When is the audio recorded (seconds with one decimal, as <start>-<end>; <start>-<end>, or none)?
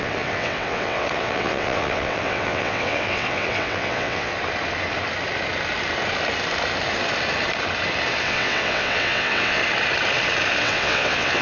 4.3-8.2; 9.6-10.6